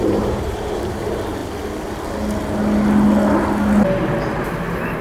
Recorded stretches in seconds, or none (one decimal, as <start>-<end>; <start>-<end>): 1.4-4.4